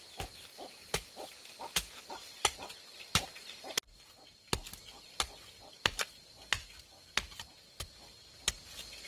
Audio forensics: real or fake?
real